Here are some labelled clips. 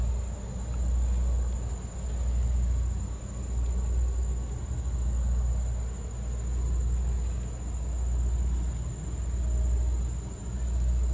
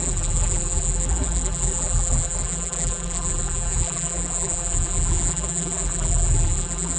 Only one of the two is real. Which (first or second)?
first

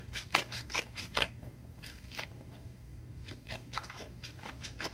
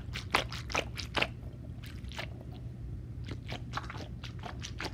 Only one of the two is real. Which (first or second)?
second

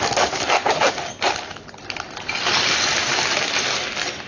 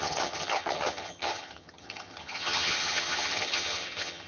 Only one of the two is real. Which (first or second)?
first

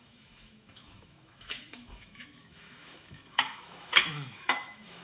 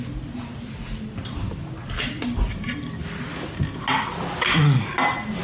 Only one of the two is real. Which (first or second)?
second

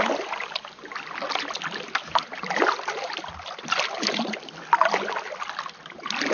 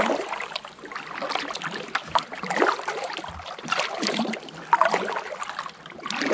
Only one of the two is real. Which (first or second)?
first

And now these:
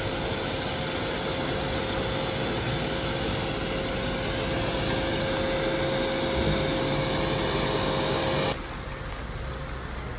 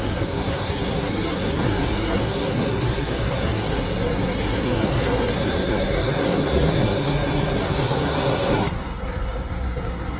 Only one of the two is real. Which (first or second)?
first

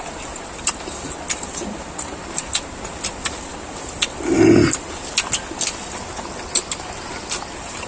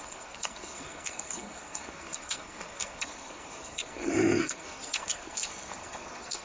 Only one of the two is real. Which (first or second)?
first